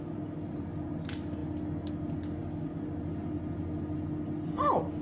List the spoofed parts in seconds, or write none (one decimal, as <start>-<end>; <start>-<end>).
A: none